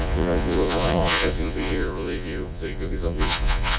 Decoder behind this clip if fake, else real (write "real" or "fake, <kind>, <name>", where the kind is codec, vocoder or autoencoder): fake, vocoder, Vocos